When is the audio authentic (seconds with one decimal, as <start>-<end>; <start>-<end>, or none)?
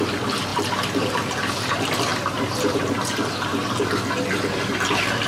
0.5-1.0; 3.5-5.3